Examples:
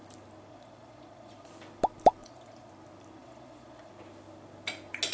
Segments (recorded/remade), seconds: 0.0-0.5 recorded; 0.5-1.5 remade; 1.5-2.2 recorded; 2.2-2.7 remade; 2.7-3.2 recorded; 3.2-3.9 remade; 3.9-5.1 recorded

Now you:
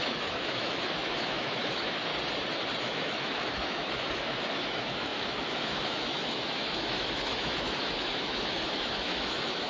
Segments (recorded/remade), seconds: 0.0-2.1 remade; 2.1-2.8 recorded; 2.8-9.7 remade